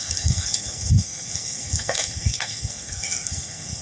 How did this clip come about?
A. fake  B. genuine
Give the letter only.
A